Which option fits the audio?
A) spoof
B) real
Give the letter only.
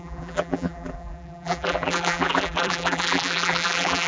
A